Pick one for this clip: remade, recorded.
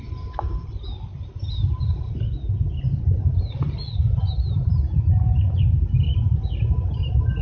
recorded